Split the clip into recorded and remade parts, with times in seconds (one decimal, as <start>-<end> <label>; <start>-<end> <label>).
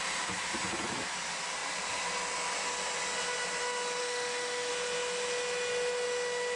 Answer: 0.0-4.0 recorded; 4.0-4.7 remade; 4.7-6.6 recorded